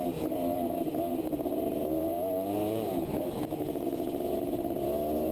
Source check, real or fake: fake